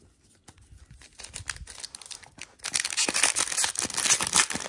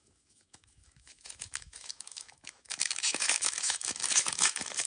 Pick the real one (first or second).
first